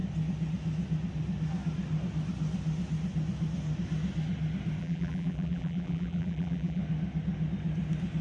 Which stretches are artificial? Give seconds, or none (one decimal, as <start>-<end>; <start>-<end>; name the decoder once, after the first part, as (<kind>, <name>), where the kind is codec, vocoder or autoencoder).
4.8-6.8 (vocoder, BigVGAN v2)